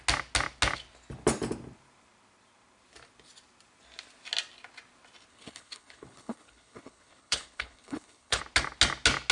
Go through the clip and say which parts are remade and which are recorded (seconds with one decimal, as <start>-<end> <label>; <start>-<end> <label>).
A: 0.0-5.3 recorded; 5.3-8.4 remade; 8.4-9.3 recorded